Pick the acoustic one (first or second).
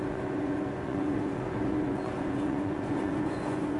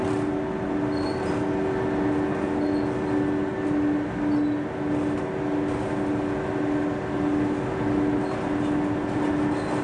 second